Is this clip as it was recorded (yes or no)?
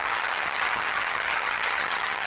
no